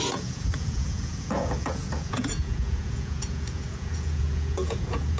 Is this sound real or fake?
fake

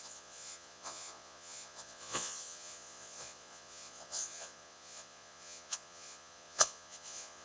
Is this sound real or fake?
fake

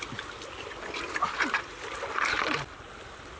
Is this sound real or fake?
real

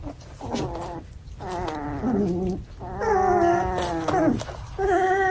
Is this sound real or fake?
real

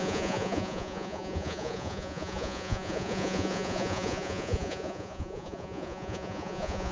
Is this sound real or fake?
fake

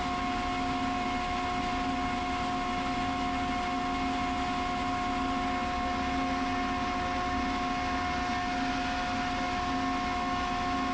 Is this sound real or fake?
real